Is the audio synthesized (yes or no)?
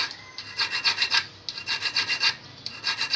no